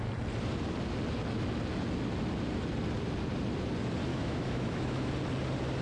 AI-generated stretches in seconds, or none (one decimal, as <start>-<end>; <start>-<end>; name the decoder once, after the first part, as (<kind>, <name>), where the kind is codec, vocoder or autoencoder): 4.1-5.1 (autoencoder, DAC-VAE)